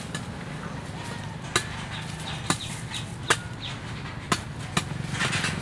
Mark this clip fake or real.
real